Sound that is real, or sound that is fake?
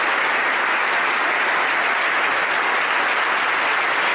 real